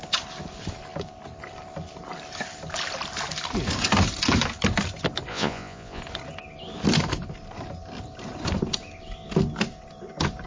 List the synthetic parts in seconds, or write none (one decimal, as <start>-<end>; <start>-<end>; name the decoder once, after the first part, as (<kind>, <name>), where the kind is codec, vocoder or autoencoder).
5.3-6.0 (vocoder, Vocos)